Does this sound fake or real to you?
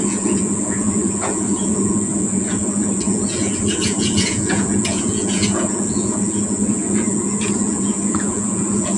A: fake